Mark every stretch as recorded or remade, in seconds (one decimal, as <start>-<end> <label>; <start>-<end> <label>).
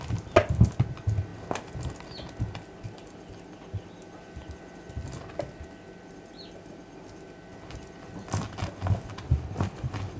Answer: 0.0-10.2 recorded